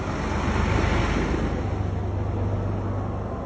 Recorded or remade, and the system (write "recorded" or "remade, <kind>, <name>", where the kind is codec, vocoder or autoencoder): recorded